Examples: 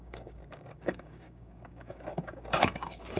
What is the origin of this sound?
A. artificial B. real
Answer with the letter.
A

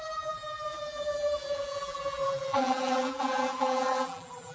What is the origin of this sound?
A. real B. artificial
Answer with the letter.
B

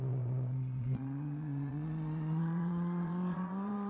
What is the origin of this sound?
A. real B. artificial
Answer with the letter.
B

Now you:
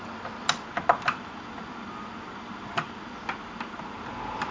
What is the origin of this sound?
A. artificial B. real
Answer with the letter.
B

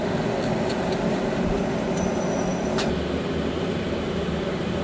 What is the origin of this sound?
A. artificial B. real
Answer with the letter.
B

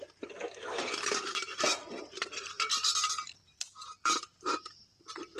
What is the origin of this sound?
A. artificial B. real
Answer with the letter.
A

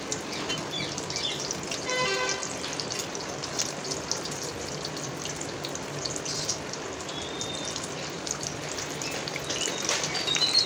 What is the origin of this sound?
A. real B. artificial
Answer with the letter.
A